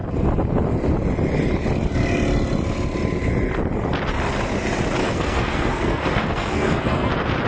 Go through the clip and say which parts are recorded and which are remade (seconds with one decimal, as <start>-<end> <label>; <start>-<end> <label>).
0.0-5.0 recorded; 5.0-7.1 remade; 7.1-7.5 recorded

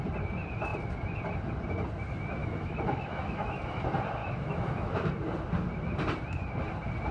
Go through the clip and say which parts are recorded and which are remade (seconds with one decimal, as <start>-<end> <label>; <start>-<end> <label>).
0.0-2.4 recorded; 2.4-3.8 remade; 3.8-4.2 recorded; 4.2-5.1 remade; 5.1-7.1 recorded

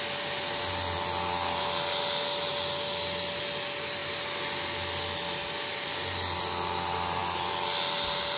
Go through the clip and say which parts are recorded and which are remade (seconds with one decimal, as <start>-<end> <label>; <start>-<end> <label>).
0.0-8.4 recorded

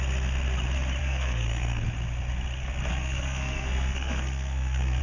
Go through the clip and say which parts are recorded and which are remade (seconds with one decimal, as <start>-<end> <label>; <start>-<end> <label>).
0.0-1.0 recorded; 1.0-1.8 remade; 1.8-2.9 recorded; 2.9-5.0 remade

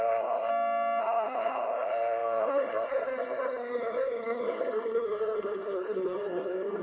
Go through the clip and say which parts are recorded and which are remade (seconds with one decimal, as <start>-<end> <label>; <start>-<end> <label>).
0.0-0.5 remade; 0.5-1.0 recorded; 1.0-6.8 remade